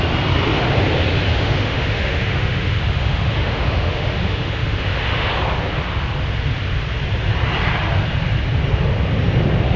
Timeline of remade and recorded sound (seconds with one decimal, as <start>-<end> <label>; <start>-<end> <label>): 0.0-1.3 recorded; 1.3-5.3 remade; 5.3-9.8 recorded